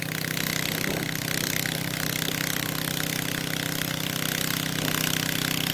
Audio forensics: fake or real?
real